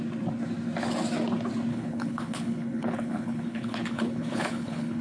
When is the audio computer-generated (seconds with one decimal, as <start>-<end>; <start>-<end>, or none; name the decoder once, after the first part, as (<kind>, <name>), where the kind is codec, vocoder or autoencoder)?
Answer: 1.7-5.0 (codec, HILCodec)